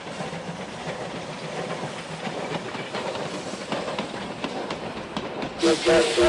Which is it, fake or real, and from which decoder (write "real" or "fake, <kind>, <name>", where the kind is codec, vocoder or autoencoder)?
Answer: real